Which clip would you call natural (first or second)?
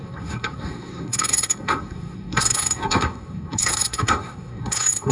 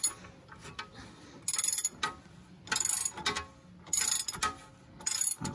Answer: second